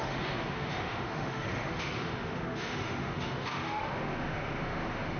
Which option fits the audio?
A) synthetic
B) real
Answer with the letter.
A